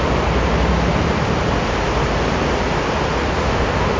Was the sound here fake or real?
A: real